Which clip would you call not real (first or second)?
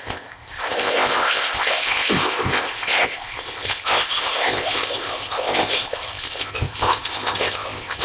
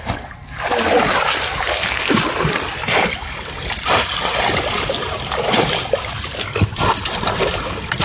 first